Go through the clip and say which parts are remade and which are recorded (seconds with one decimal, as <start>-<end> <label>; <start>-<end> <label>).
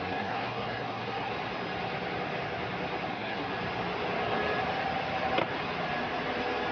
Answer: 0.0-1.3 remade; 1.3-3.1 recorded; 3.1-3.5 remade; 3.5-6.7 recorded